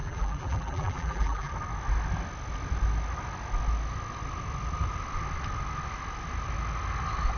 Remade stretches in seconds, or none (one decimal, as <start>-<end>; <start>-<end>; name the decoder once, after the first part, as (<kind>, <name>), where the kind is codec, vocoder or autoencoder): 0.0-1.5 (vocoder, BigVGAN v2)